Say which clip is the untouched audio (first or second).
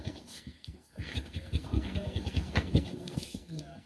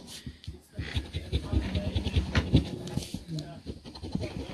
second